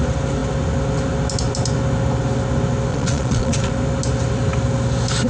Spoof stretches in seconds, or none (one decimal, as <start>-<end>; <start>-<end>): 2.9-3.7